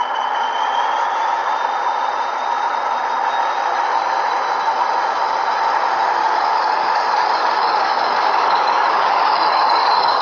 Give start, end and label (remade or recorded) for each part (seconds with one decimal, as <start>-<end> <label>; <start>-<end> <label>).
0.0-6.2 recorded; 6.2-10.2 remade